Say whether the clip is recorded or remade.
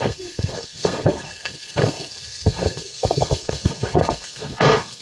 remade